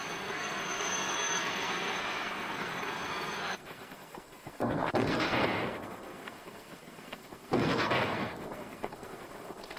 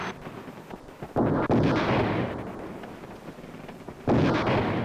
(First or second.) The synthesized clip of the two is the first